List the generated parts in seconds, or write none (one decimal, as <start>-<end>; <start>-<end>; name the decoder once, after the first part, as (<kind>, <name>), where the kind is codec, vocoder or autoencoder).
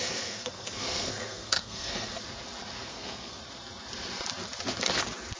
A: 0.0-2.2 (codec, SNAC); 2.9-3.4